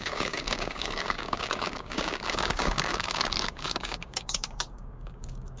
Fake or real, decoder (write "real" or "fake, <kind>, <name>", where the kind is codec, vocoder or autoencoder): fake, codec, DAC